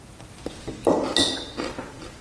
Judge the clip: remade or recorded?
recorded